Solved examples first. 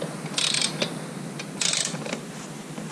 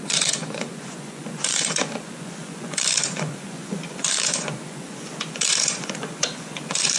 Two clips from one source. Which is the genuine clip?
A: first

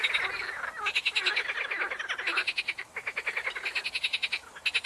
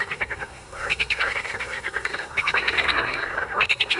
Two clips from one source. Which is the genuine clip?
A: first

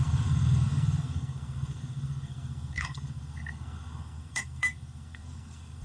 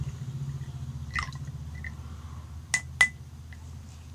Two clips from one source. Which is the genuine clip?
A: second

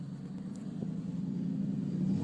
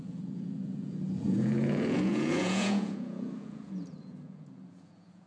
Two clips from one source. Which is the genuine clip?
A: first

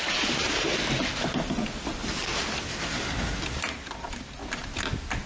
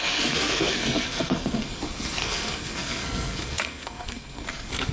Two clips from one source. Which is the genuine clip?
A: first